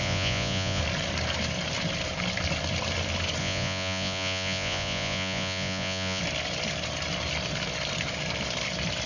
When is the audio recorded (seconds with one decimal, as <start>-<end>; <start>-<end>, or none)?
0.8-3.4; 6.2-9.1